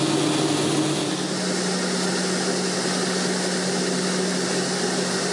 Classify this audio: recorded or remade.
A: recorded